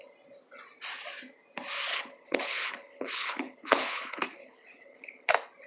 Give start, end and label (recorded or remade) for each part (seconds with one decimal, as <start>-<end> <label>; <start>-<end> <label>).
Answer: 0.0-1.9 recorded; 1.9-5.3 remade; 5.3-5.7 recorded